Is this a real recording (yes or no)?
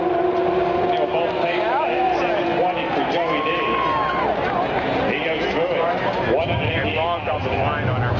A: yes